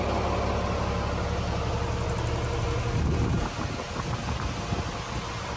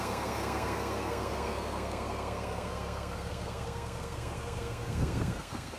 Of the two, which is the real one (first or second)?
first